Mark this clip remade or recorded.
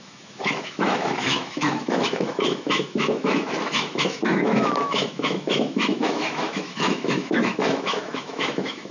remade